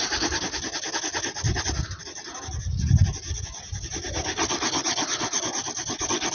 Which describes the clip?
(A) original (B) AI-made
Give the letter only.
A